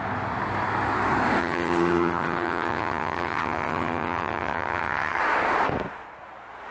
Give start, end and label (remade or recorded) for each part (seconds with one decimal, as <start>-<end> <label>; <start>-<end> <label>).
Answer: 0.0-1.4 recorded; 1.4-5.2 remade; 5.2-6.7 recorded